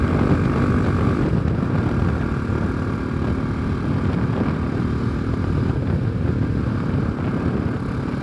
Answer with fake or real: real